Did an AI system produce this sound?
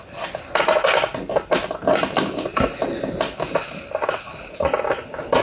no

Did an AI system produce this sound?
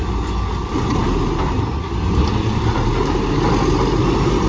no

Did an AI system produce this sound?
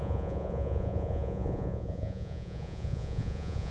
yes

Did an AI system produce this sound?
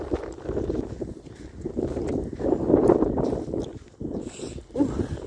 no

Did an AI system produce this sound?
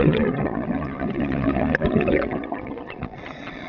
yes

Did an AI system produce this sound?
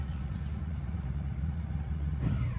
yes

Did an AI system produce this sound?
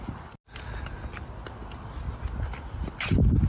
no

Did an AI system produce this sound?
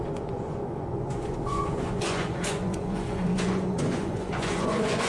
yes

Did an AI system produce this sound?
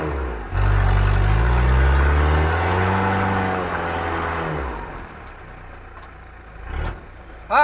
no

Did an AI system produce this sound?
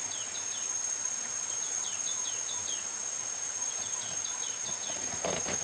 yes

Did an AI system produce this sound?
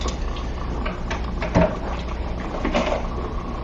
no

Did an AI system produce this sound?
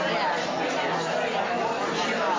no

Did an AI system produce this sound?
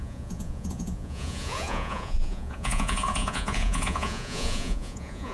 yes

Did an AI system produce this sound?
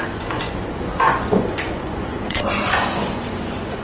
yes